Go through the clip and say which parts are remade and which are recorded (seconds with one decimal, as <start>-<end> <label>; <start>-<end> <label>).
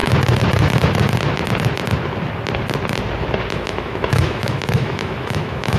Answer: 0.0-3.5 recorded; 3.5-5.8 remade